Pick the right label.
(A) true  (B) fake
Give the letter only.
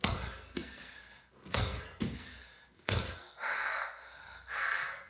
B